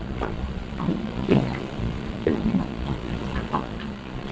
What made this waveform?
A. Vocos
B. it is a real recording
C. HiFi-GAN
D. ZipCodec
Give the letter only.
A